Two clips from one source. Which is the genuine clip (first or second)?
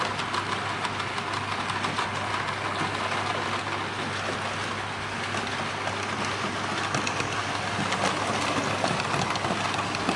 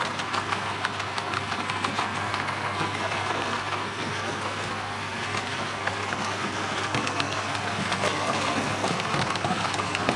first